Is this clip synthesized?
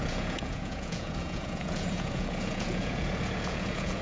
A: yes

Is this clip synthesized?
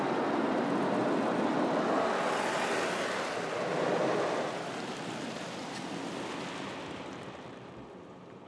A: no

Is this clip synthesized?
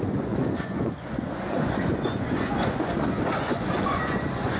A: yes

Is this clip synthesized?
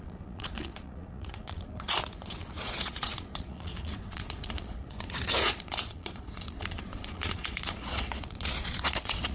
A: yes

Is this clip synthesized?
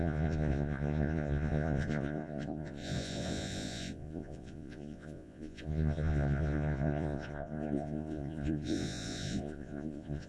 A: yes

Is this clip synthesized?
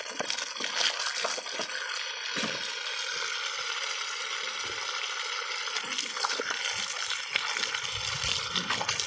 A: no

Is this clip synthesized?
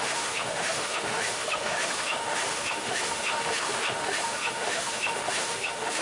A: yes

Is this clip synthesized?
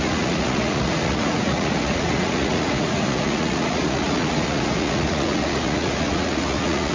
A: yes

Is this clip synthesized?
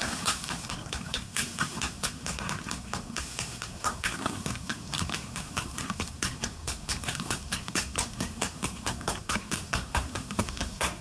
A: yes